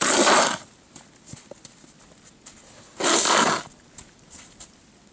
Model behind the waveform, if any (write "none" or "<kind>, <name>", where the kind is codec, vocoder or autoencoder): none